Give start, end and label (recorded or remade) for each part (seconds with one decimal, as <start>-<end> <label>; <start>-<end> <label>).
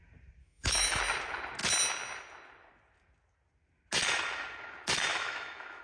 0.0-0.4 recorded; 0.4-1.0 remade; 1.0-5.1 recorded; 5.1-5.8 remade